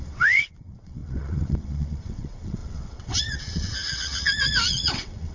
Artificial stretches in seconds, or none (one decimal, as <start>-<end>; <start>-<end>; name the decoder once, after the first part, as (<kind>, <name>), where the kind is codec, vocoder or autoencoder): 0.0-5.3 (vocoder, WaveNeXt)